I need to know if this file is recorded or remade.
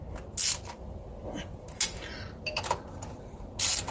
recorded